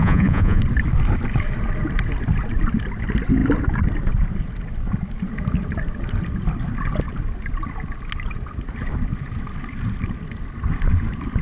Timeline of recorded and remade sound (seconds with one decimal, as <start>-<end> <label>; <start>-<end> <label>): 0.0-0.6 remade; 0.6-11.4 recorded